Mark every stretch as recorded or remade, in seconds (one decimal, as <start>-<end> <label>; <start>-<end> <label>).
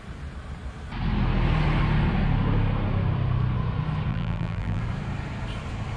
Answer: 0.0-4.1 recorded; 4.1-4.8 remade; 4.8-6.0 recorded